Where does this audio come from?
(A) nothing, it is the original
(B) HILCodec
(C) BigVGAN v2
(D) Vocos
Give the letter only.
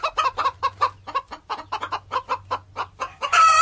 A